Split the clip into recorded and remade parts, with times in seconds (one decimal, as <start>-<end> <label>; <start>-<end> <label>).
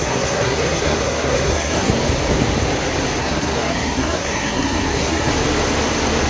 0.0-1.9 remade; 1.9-3.2 recorded; 3.2-5.3 remade; 5.3-6.3 recorded